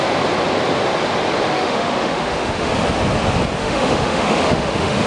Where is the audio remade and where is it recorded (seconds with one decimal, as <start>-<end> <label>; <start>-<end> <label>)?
0.0-1.5 recorded; 1.5-2.7 remade; 2.7-3.6 recorded; 3.6-5.1 remade